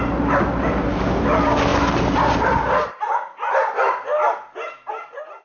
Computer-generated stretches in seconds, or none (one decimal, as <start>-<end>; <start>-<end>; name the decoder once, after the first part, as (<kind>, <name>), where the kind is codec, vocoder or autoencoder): none